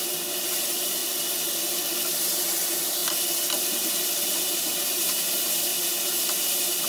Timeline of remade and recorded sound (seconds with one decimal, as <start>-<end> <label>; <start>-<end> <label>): 0.0-1.0 remade; 1.0-2.2 recorded; 2.2-3.0 remade; 3.0-4.3 recorded; 4.3-5.7 remade; 5.7-6.2 recorded; 6.2-6.9 remade